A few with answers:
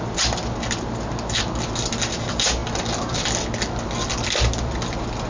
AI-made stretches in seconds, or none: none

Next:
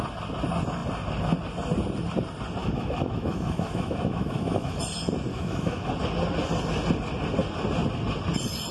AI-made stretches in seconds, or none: 2.6-4.8 (autoencoder, DAC-VAE); 5.3-5.9

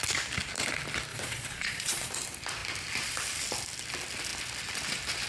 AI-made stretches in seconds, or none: 1.1-2.1 (vocoder, Vocos)

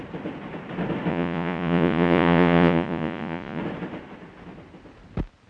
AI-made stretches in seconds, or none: 1.1-3.6 (vocoder, Vocos)

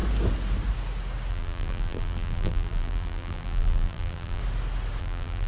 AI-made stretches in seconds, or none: 1.3-4.4 (vocoder, BigVGAN v2); 5.0-5.5

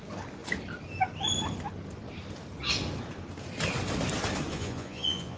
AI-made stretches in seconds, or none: 4.5-5.4 (vocoder, Vocos)

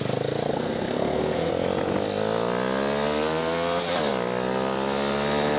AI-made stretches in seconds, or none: 0.5-1.5 (codec, SNAC)